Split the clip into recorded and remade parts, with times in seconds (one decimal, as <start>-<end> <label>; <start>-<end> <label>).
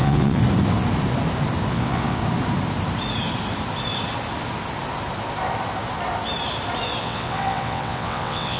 0.0-0.4 remade; 0.4-1.7 recorded; 1.7-2.2 remade; 2.2-7.0 recorded; 7.0-8.6 remade